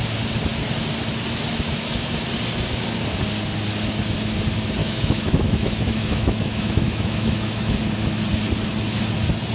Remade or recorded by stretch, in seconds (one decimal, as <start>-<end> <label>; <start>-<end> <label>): 0.0-4.8 recorded; 4.8-7.7 remade; 7.7-9.5 recorded